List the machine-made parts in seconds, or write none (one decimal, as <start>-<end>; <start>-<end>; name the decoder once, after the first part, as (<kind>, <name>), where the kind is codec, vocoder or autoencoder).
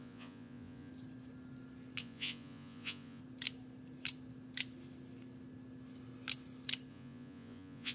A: 0.0-0.9 (vocoder, Vocos); 2.0-3.2; 6.9-7.9